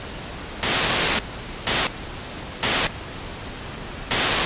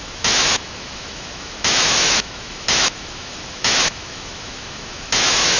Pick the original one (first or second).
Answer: first